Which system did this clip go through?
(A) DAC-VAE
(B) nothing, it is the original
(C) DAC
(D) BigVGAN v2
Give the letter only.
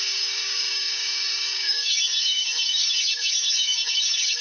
C